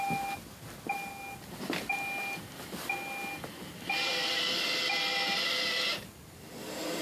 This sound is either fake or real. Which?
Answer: real